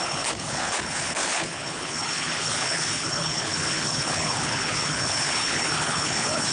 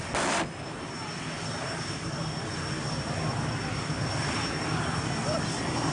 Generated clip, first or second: first